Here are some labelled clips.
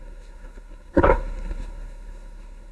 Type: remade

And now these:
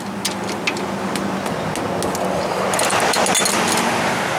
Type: recorded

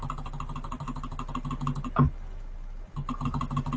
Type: recorded